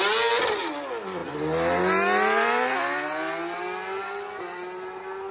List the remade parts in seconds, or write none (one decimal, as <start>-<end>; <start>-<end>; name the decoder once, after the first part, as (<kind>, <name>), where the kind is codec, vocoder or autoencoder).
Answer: none